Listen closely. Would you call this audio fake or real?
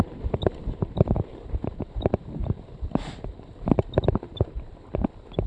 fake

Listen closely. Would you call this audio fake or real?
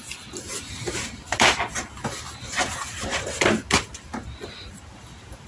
real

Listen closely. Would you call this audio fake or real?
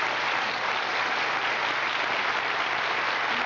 real